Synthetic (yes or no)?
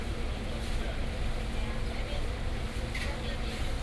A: no